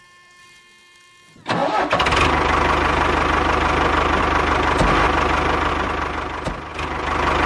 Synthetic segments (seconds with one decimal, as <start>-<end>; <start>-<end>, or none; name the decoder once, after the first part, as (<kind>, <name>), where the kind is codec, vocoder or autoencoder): none